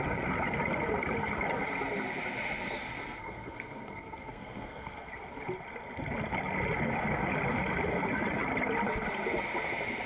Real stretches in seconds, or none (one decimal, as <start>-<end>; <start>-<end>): 0.0-3.2; 5.1-10.1